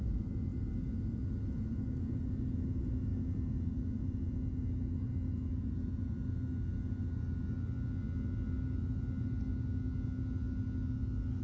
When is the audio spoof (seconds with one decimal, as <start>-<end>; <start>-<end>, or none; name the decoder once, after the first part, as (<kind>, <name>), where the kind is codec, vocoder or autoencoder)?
none